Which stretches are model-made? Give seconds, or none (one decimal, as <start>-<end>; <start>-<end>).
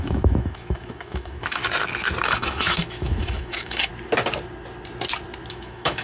0.0-1.6; 2.2-3.9; 5.5-6.0